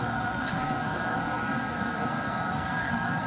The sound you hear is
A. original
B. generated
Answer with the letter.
B